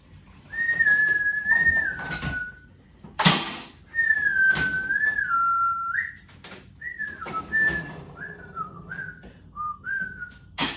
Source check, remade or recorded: recorded